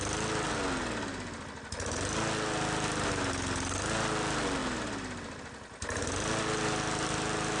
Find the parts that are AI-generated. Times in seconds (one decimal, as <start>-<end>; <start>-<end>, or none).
none